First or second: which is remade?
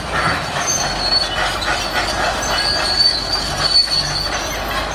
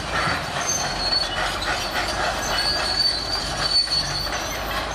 second